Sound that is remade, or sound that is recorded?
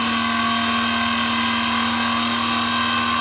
recorded